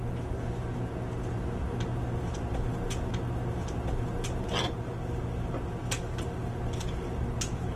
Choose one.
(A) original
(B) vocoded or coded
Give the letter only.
A